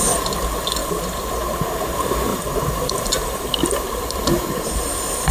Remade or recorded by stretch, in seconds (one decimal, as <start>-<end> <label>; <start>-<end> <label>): 0.0-0.8 recorded; 0.8-1.6 remade; 1.6-2.3 recorded; 2.3-4.0 remade; 4.0-5.3 recorded